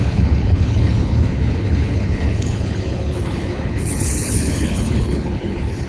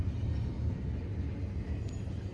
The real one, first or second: second